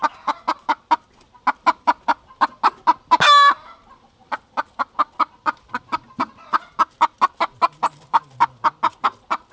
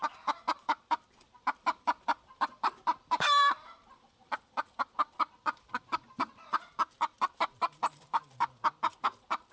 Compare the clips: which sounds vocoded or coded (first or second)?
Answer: second